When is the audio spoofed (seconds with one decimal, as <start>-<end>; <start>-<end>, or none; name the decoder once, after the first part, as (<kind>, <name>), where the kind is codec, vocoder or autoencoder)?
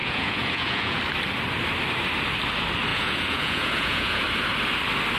0.0-1.0 (vocoder, Vocos); 2.9-4.2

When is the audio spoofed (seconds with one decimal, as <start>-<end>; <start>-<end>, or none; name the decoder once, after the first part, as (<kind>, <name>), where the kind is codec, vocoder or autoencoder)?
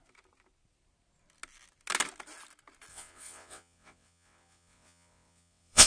2.9-5.9 (vocoder, WaveNeXt)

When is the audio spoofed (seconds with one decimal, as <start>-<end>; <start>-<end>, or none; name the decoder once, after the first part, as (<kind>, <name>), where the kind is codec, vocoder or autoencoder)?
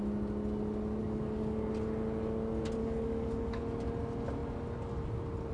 1.0-1.7 (codec, DAC); 2.8-3.6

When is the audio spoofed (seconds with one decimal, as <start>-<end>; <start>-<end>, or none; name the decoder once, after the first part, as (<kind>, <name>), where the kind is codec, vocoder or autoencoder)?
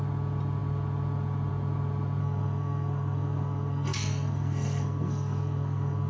2.2-6.1 (codec, SNAC)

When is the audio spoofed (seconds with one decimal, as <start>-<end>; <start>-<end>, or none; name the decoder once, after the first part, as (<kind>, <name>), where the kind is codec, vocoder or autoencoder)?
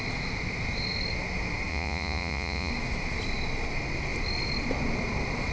1.7-2.7 (vocoder, Vocos)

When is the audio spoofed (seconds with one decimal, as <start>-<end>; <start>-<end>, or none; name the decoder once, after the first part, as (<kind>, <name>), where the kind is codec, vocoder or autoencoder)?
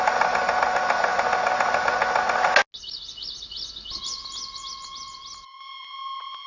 none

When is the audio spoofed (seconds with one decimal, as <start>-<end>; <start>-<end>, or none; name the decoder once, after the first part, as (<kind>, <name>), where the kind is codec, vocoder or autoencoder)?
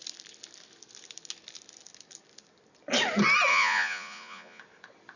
3.5-4.6 (vocoder, Vocos)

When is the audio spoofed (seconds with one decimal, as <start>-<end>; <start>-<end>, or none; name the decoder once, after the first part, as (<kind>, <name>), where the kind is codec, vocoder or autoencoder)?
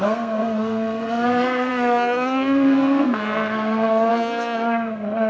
0.0-5.3 (codec, SNAC)